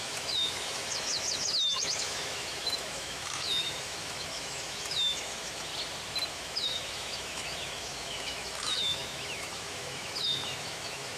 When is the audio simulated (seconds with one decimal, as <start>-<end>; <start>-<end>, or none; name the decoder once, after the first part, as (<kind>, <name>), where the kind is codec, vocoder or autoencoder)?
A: 0.0-5.7 (autoencoder, DAC-VAE); 6.3-11.2